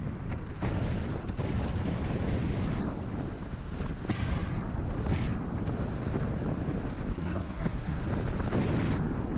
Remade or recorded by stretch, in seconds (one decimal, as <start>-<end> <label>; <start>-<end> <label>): 0.0-7.1 recorded; 7.1-8.0 remade; 8.0-9.4 recorded

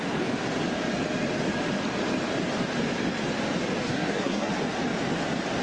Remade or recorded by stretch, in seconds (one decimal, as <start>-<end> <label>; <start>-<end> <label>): 0.0-3.8 recorded; 3.8-4.5 remade; 4.5-5.6 recorded

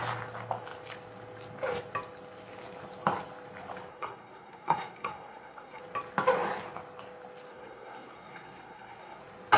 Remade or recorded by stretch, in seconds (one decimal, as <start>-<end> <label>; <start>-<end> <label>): 0.0-3.9 recorded; 3.9-5.8 remade; 5.8-7.5 recorded; 7.5-9.2 remade; 9.2-9.6 recorded